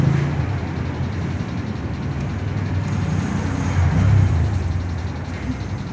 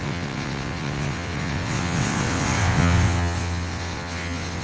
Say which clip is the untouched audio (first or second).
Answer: first